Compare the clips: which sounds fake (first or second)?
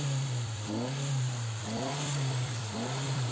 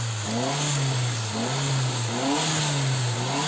first